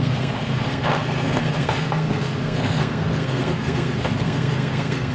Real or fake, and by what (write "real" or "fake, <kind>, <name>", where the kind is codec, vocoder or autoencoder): fake, codec, SNAC